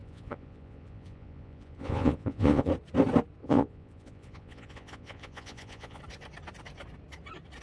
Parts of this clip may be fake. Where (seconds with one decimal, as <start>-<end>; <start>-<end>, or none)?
0.0-2.7; 3.4-6.0